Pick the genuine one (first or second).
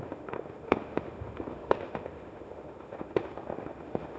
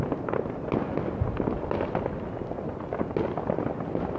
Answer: second